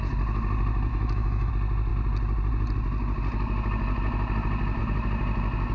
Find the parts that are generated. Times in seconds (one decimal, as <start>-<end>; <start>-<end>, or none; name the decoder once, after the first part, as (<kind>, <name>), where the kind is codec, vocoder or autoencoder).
0.9-1.5 (autoencoder, DAC-VAE)